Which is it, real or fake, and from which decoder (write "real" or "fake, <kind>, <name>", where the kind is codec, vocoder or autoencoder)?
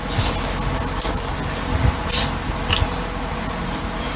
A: real